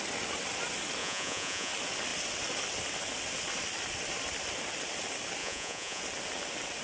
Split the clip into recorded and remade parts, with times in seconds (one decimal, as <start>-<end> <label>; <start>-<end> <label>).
0.0-1.0 recorded; 1.0-1.7 remade; 1.7-5.4 recorded; 5.4-6.0 remade; 6.0-6.8 recorded